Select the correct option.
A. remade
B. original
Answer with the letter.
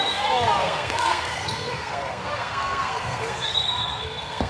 A